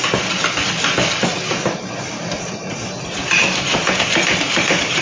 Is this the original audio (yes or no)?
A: yes